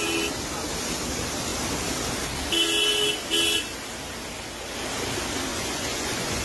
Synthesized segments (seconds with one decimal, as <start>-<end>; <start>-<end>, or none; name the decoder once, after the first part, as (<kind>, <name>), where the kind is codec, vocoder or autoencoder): 5.5-6.4 (vocoder, Vocos)

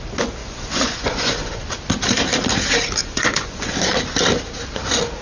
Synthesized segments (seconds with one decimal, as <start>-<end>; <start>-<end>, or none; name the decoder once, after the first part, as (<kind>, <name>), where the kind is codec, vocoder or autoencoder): 0.4-1.7 (vocoder, Vocos); 3.0-4.0

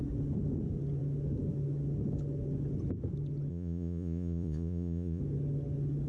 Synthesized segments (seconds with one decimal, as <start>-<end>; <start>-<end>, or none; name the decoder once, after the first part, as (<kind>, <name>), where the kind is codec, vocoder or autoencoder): 3.5-5.2 (vocoder, Vocos)

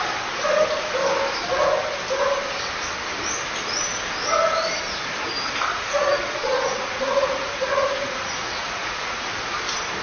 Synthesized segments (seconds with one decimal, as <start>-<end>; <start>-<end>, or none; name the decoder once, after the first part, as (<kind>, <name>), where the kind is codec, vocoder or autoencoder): 5.7-9.3 (vocoder, Vocos)

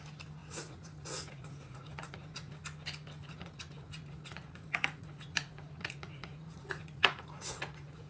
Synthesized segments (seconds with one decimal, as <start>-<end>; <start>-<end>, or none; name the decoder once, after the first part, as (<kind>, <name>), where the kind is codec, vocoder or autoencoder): 0.4-2.5 (vocoder, Vocos); 3.2-8.1